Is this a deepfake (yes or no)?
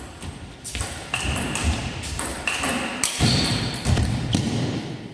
yes